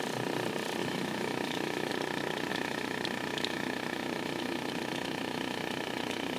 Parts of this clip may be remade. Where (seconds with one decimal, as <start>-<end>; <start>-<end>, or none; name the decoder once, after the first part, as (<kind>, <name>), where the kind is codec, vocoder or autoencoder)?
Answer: 0.8-1.9 (autoencoder, DAC-VAE); 2.5-6.4